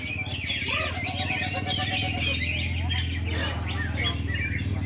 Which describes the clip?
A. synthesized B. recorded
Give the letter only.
B